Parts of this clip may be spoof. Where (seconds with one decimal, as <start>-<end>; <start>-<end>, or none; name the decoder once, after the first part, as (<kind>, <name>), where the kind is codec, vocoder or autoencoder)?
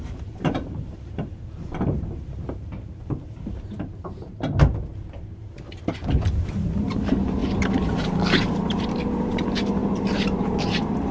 0.0-4.9 (vocoder, BigVGAN v2); 5.4-11.1